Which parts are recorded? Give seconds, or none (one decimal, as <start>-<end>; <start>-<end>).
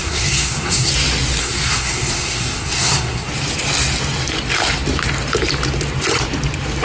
0.9-1.4; 3.3-6.8